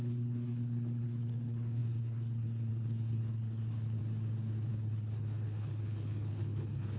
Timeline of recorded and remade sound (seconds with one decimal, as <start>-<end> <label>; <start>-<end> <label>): 0.0-4.0 remade; 4.0-4.7 recorded; 4.7-7.0 remade